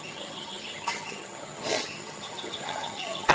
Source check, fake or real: fake